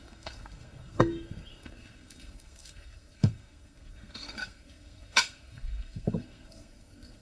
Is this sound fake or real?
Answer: fake